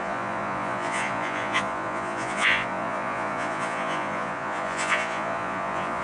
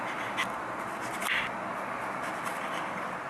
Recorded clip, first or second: second